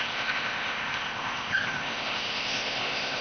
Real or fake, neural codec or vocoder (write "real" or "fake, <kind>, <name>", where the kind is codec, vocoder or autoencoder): fake, codec, ZipCodec